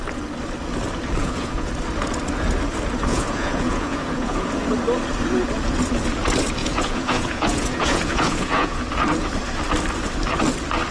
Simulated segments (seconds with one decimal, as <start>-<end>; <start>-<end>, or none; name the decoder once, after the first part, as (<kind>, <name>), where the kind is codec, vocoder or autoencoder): 1.2-1.7 (vocoder, Vocos); 3.1-4.5; 6.6-8.8